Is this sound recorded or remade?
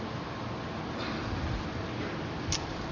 recorded